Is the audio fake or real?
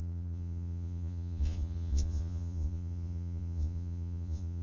fake